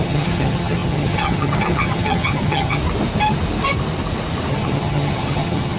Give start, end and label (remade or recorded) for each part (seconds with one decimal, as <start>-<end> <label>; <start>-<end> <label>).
0.0-2.8 remade; 2.8-4.5 recorded; 4.5-5.8 remade